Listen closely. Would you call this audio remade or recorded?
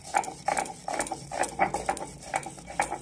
recorded